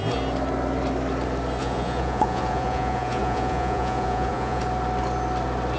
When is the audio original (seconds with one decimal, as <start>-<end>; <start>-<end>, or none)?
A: 0.0-1.6; 4.6-5.8